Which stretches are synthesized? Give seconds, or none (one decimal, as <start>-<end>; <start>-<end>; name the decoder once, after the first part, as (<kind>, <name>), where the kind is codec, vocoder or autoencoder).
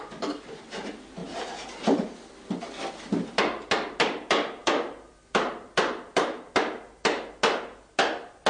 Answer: none